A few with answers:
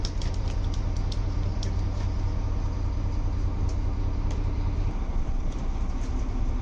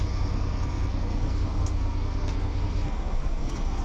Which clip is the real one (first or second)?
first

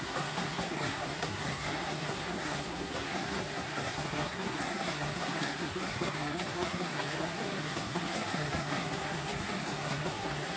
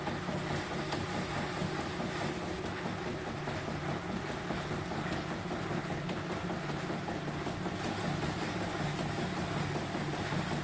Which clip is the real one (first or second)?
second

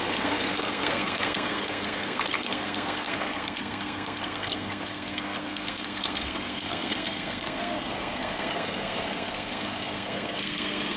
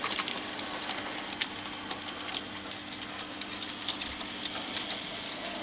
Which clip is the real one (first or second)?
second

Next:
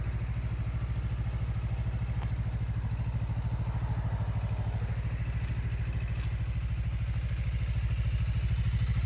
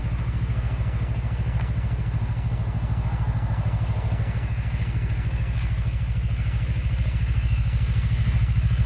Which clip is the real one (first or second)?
first